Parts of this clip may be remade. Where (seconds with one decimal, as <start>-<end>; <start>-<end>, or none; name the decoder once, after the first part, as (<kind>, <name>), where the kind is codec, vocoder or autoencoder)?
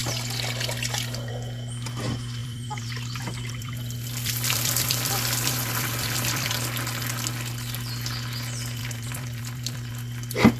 2.4-6.5 (vocoder, BigVGAN v2); 8.8-9.9